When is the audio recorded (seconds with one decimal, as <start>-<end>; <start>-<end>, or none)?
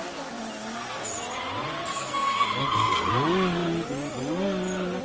0.0-1.9; 3.1-5.0